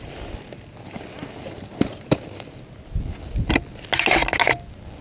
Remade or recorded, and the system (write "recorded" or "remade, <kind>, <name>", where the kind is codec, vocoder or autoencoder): recorded